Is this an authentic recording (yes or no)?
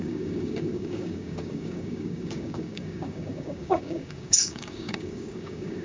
no